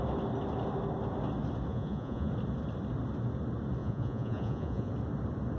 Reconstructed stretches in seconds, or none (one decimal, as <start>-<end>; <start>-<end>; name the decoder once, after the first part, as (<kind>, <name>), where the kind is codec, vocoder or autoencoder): 1.7-2.3 (vocoder, Vocos); 3.8-4.9